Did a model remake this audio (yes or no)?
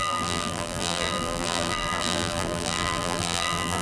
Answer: yes